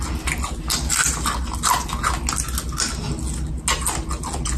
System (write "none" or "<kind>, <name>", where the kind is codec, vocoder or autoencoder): none